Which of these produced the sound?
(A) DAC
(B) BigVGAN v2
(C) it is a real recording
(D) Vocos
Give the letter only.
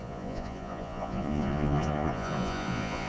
D